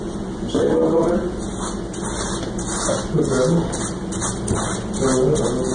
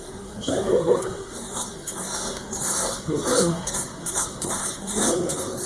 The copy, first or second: second